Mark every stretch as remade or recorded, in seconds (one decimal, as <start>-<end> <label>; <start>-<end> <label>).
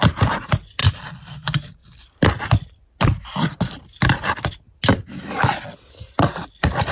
0.0-0.8 remade; 0.8-1.3 recorded; 1.3-1.8 remade; 1.8-5.9 recorded; 5.9-6.9 remade